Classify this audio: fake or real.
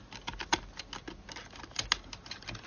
real